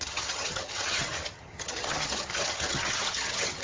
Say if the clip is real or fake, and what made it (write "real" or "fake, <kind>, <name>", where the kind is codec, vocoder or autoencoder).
fake, vocoder, HiFi-GAN